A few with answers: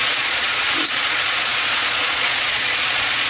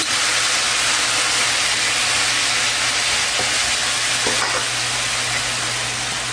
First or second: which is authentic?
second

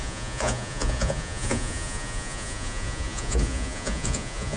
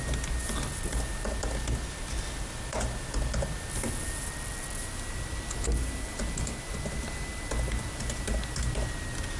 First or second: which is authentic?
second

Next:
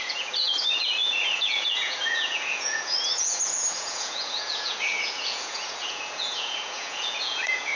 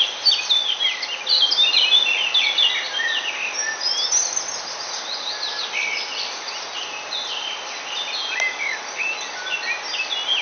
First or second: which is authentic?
second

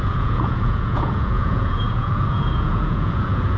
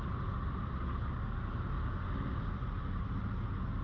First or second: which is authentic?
second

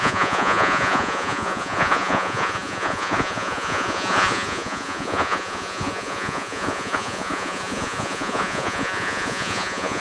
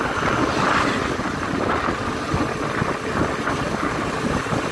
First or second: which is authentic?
second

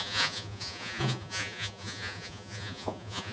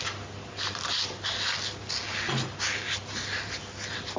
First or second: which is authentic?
second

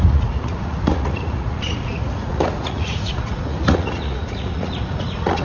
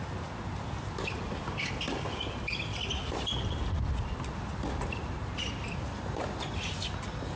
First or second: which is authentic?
second